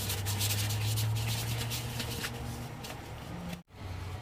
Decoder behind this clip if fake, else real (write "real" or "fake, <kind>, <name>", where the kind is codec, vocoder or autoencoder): real